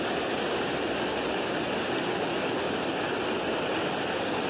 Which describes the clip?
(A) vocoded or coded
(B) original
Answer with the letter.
B